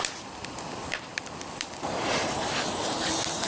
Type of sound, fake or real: fake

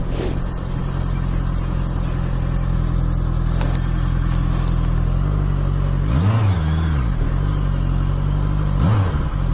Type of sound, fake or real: real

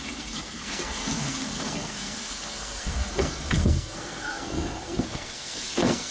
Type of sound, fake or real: fake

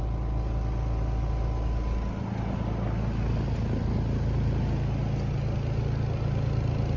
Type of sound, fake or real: real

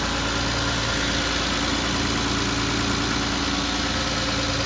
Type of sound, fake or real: real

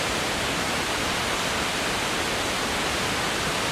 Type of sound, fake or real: real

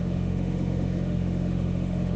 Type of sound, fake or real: fake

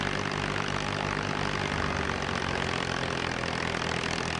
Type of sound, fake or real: real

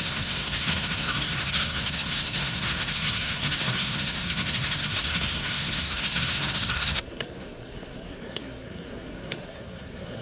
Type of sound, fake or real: fake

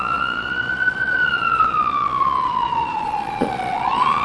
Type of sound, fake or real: fake